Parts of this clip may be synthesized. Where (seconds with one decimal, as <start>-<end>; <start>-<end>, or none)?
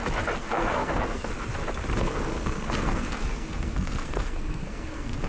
0.4-1.3; 2.0-5.3